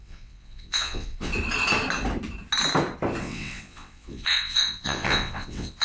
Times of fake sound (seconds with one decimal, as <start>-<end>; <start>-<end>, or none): 0.0-1.3; 3.2-5.8